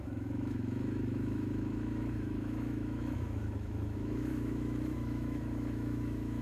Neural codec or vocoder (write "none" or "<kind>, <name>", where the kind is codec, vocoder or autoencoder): autoencoder, DAC-VAE